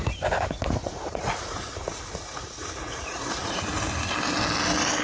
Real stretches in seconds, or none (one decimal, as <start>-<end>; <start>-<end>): 0.0-0.8; 3.8-5.0